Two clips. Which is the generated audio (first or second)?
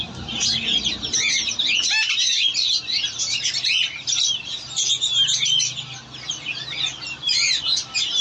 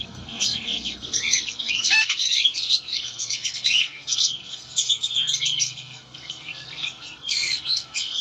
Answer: second